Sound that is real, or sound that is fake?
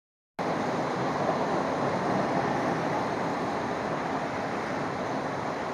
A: real